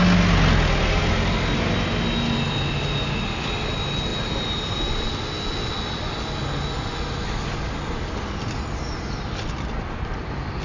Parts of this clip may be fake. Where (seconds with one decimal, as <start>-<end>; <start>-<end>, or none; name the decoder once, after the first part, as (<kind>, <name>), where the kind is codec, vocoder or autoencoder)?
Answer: none